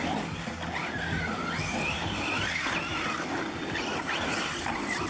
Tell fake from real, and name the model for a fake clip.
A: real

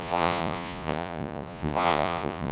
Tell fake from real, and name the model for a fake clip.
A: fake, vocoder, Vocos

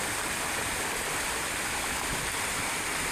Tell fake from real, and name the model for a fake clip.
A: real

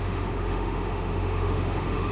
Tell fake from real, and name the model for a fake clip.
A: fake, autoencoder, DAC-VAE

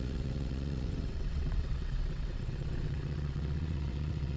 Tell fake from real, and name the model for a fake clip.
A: fake, vocoder, WaveNeXt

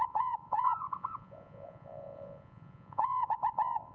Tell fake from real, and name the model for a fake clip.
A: fake, vocoder, Vocos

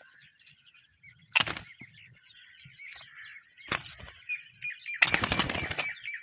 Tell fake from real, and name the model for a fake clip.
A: real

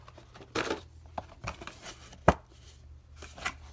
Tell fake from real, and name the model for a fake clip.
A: real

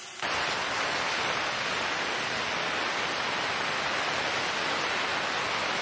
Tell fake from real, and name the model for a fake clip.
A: real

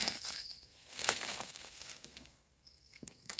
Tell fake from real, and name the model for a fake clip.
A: fake, codec, SNAC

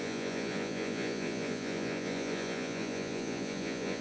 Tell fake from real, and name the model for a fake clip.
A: fake, vocoder, Vocos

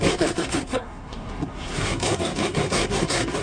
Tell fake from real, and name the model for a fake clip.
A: fake, codec, SNAC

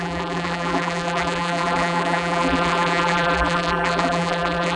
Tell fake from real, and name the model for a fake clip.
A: fake, vocoder, BigVGAN v2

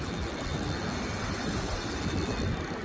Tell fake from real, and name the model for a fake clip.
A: real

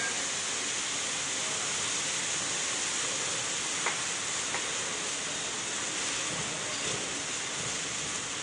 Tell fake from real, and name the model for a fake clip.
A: real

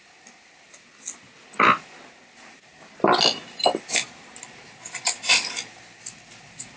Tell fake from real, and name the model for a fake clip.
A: real